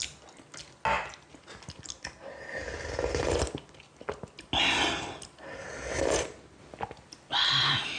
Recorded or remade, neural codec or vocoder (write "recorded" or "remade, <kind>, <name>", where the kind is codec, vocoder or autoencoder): recorded